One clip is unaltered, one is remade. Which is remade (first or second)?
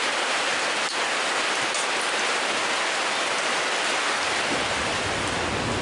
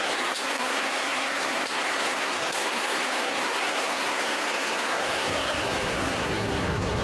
second